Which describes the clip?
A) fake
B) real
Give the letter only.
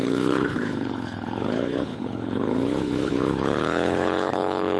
A